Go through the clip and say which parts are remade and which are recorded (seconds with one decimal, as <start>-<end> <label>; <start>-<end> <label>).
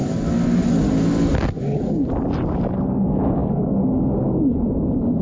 0.0-5.2 recorded